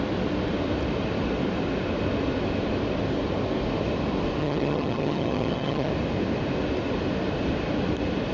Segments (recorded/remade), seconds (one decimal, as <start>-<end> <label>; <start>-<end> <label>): 0.0-4.4 recorded; 4.4-5.9 remade; 5.9-8.3 recorded